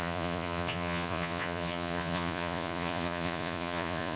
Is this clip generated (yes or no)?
yes